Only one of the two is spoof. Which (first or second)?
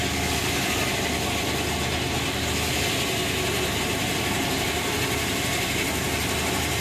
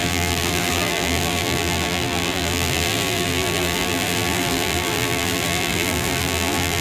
second